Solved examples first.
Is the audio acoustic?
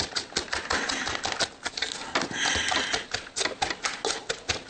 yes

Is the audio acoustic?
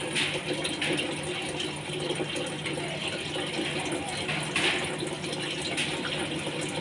yes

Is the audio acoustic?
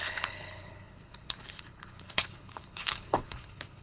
no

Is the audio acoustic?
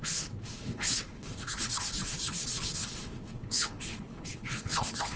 no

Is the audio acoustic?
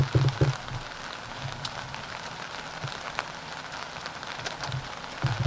yes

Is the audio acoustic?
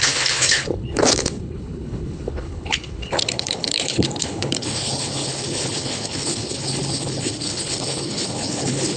no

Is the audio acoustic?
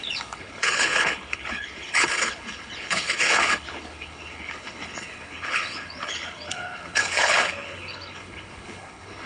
no